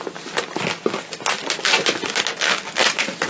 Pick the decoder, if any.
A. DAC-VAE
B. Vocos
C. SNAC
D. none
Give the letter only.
D